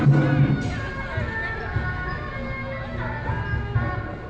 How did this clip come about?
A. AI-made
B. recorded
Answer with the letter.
B